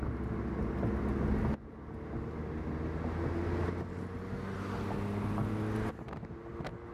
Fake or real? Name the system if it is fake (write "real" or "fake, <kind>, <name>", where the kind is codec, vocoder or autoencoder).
real